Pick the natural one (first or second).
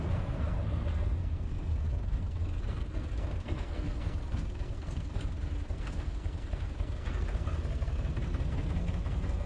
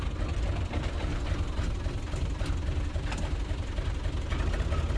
second